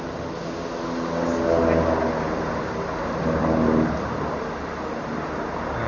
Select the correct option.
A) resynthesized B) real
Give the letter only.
B